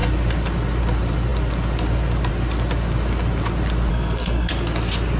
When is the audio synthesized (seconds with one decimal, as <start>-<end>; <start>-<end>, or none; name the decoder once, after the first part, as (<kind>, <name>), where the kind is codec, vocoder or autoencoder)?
3.9-4.5 (codec, SNAC)